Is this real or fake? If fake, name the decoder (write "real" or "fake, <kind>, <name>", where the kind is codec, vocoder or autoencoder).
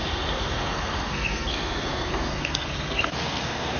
fake, codec, SNAC